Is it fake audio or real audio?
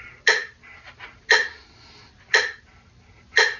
real